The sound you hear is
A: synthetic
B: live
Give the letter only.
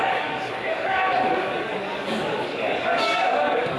A